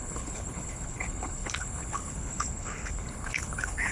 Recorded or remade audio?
remade